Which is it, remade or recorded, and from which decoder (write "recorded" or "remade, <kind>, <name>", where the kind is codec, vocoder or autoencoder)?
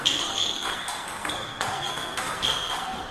remade, codec, SNAC